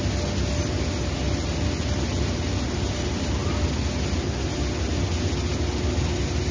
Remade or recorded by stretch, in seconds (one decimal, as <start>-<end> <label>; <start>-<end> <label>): 0.0-6.5 recorded